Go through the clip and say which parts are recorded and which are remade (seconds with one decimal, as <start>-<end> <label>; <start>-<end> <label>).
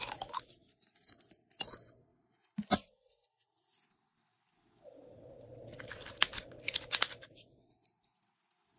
0.0-0.6 recorded; 0.6-1.5 remade; 1.5-2.1 recorded; 2.1-2.7 remade; 2.7-8.8 recorded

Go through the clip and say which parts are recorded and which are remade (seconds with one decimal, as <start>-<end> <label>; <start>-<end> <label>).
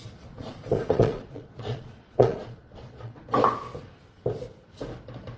0.0-3.2 remade; 3.2-5.4 recorded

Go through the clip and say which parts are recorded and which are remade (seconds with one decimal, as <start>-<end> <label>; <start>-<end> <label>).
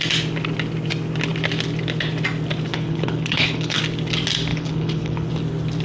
0.0-2.7 recorded; 2.7-3.8 remade; 3.8-4.5 recorded; 4.5-5.3 remade; 5.3-5.8 recorded